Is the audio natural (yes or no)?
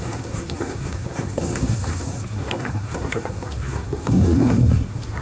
no